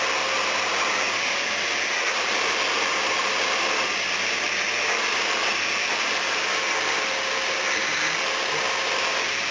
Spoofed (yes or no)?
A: no